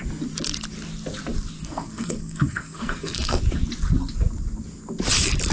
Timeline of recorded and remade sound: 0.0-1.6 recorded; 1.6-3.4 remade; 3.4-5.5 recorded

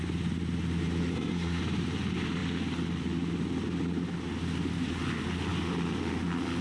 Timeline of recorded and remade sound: 0.0-1.1 recorded; 1.1-1.6 remade; 1.6-6.6 recorded

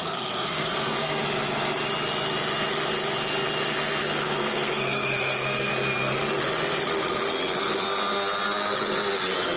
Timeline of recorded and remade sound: 0.0-1.2 remade; 1.2-4.0 recorded; 4.0-5.7 remade; 5.7-9.6 recorded

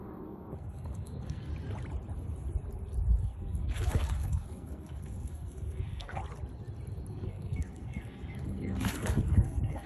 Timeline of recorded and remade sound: 0.0-1.5 remade; 1.5-3.2 recorded; 3.2-6.2 remade; 6.2-7.1 recorded; 7.1-9.9 remade

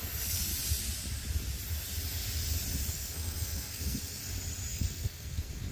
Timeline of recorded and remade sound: 0.0-0.5 remade; 0.5-2.9 recorded; 2.9-4.2 remade; 4.2-4.7 recorded; 4.7-5.7 remade